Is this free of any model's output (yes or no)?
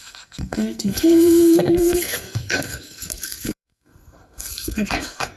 no